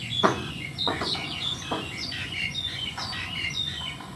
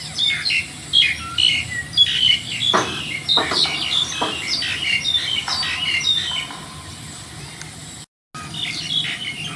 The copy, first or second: first